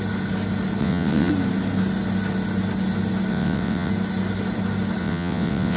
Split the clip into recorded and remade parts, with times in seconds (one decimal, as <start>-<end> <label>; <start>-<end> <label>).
0.0-0.8 recorded; 0.8-1.3 remade; 1.3-3.3 recorded; 3.3-3.9 remade; 3.9-5.0 recorded; 5.0-5.8 remade